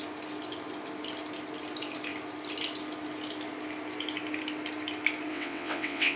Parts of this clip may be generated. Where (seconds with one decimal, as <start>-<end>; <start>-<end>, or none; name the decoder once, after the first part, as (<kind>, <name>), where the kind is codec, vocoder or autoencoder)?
5.3-6.2 (vocoder, WaveNeXt)

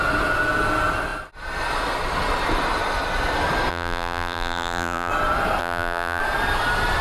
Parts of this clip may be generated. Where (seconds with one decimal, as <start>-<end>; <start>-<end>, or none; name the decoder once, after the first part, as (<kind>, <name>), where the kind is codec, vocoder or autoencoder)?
3.7-5.1 (vocoder, BigVGAN v2); 5.6-6.2